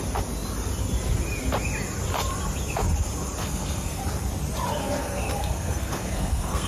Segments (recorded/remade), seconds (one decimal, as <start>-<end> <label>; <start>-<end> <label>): 0.0-3.4 recorded; 3.4-4.0 remade; 4.0-4.8 recorded; 4.8-6.7 remade

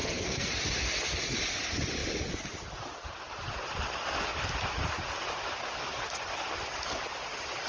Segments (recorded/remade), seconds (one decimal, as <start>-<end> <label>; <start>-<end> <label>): 0.0-0.5 remade; 0.5-7.7 recorded

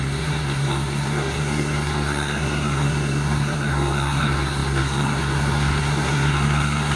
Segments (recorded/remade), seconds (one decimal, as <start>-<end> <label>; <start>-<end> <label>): 0.0-7.0 remade

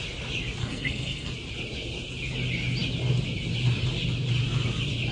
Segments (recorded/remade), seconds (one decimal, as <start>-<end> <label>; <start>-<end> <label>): 0.0-0.6 recorded; 0.6-1.3 remade; 1.3-5.1 recorded

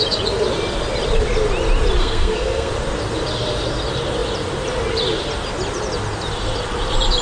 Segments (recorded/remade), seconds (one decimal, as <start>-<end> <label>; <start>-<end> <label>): 0.0-2.0 recorded; 2.0-2.7 remade; 2.7-7.2 recorded

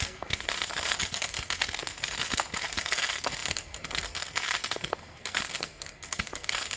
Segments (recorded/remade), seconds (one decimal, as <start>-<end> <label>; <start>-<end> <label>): 0.0-6.8 remade

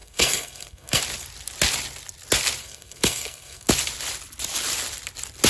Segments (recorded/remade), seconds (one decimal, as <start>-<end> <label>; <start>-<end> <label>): 0.0-1.0 remade; 1.0-2.6 recorded; 2.6-3.7 remade; 3.7-5.5 recorded